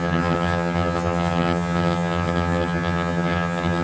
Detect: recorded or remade remade